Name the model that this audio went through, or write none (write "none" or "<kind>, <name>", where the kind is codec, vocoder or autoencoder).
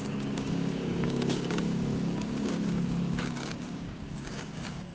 codec, DAC